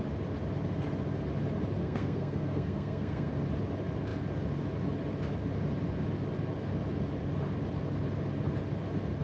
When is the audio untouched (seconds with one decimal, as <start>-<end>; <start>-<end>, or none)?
0.0-1.8; 3.3-9.2